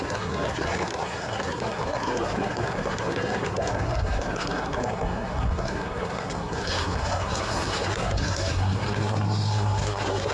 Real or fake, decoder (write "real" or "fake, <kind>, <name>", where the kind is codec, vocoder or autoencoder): fake, codec, SNAC